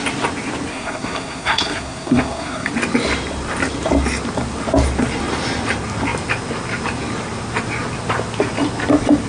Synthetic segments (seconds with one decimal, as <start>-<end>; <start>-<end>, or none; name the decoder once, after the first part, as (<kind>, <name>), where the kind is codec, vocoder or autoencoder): 0.7-2.7 (codec, SNAC)

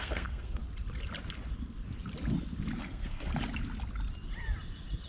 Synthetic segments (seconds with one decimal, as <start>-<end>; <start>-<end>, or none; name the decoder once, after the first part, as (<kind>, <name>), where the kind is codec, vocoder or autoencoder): 0.0-0.6 (codec, SNAC); 2.8-3.3

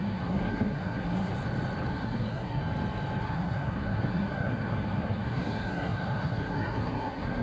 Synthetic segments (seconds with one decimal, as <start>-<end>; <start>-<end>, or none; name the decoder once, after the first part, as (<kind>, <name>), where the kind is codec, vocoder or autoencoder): 0.0-1.3 (codec, SNAC); 1.9-2.6; 3.2-7.4

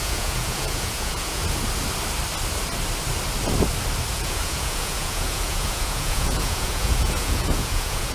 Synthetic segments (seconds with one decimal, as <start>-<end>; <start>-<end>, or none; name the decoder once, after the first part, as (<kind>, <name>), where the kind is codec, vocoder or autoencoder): 0.0-1.4 (vocoder, Vocos); 4.1-8.1

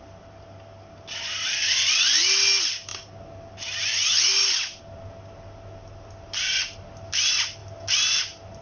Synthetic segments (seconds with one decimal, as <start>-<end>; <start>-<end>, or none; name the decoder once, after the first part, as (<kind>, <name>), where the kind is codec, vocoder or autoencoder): none